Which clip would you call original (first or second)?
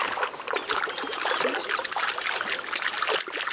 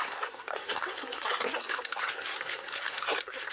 first